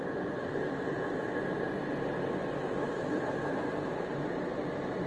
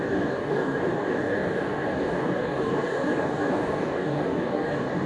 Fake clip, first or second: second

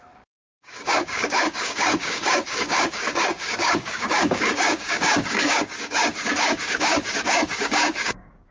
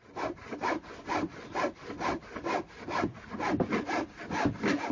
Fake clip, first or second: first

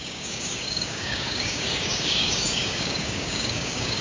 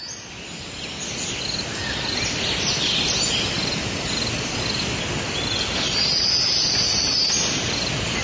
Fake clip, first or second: first